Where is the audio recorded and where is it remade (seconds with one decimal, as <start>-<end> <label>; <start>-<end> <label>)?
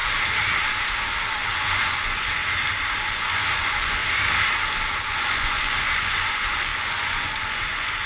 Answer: 0.0-1.5 recorded; 1.5-2.4 remade; 2.4-3.0 recorded; 3.0-4.0 remade; 4.0-5.1 recorded; 5.1-8.1 remade